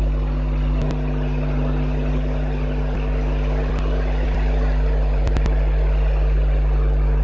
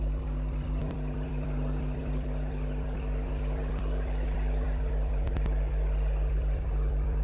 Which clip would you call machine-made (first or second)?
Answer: second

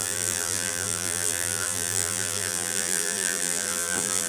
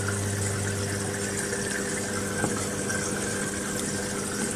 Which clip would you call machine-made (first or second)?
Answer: first